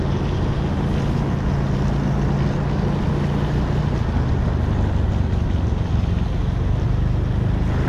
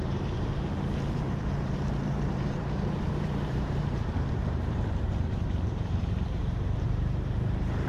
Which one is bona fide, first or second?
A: first